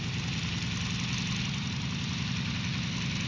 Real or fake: real